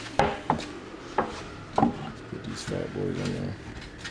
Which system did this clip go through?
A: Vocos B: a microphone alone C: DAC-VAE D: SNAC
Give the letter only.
B